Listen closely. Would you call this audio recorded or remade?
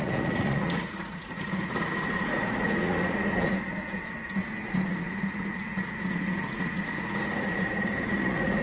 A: remade